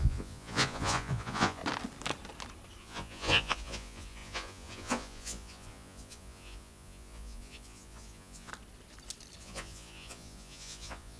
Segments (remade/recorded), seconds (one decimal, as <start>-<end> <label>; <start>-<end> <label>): 0.0-1.6 remade; 1.6-2.8 recorded; 2.8-8.5 remade; 8.5-9.4 recorded; 9.4-11.2 remade